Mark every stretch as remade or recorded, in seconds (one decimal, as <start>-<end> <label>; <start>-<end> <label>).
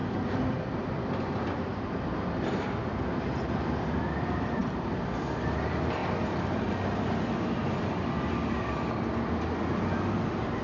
0.0-3.1 remade; 3.1-10.6 recorded